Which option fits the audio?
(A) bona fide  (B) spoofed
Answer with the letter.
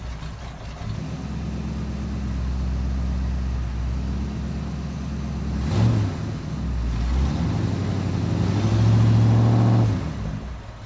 A